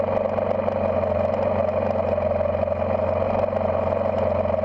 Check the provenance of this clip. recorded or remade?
recorded